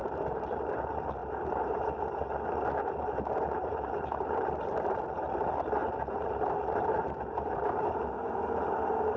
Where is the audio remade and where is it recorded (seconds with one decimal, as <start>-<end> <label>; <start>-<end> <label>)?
0.0-0.7 remade; 0.7-1.2 recorded; 1.2-5.0 remade; 5.0-5.8 recorded; 5.8-9.2 remade